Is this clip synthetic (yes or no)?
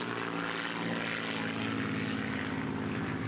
no